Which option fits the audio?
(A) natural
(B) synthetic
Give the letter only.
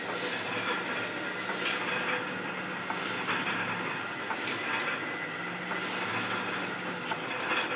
A